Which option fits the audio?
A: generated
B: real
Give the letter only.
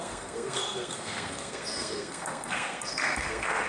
A